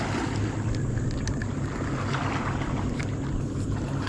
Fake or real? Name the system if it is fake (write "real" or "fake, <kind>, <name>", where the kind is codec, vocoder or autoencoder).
real